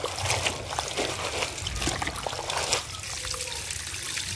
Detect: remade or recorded recorded